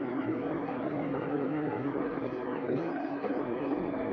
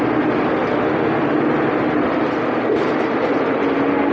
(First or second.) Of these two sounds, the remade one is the first